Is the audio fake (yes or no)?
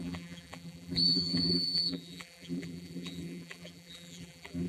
yes